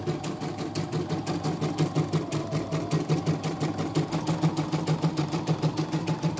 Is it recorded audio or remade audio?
recorded